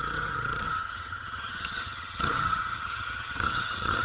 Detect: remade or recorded remade